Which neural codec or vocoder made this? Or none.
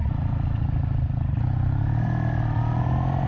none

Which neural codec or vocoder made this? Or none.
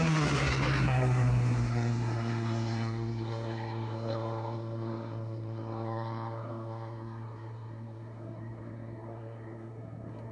codec, SNAC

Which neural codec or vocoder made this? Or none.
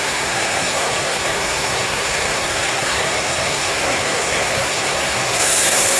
codec, SNAC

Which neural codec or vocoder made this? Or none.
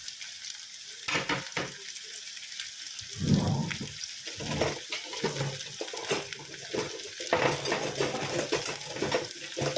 none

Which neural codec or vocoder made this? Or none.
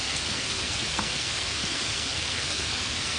codec, SNAC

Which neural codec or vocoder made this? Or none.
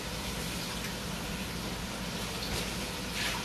none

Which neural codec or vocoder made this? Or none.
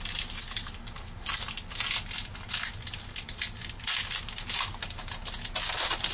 none